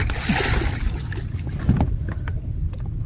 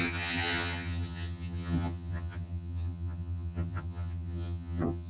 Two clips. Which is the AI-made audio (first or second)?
second